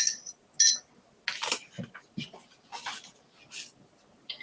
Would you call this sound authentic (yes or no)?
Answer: yes